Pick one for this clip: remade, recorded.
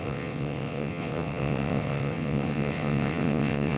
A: remade